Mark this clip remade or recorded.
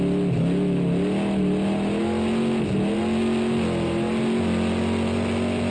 recorded